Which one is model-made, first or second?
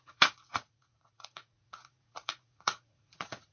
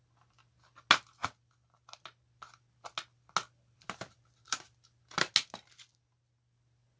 first